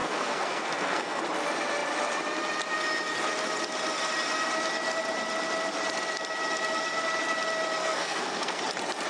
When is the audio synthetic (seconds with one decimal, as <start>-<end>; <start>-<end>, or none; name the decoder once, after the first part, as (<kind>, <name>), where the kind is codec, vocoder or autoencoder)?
0.0-1.2 (codec, SNAC); 7.8-8.6